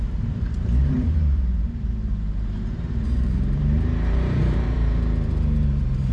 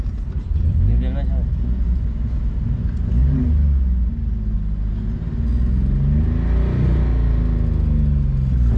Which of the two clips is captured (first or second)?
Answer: second